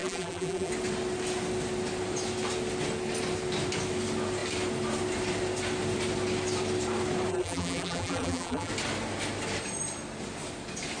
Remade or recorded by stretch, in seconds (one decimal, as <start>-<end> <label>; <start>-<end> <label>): 0.0-0.7 remade; 0.7-7.3 recorded; 7.3-8.7 remade; 8.7-11.0 recorded